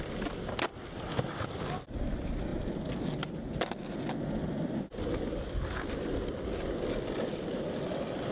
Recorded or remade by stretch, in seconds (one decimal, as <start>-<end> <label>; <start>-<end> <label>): 0.0-8.3 recorded